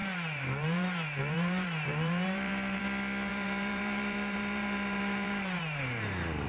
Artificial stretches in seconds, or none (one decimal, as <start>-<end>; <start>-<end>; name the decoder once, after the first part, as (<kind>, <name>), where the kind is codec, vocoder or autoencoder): 0.0-2.8 (vocoder, BigVGAN v2); 3.3-6.5